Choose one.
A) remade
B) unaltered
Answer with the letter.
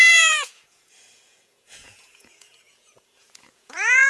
A